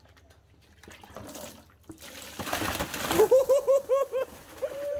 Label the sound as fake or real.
real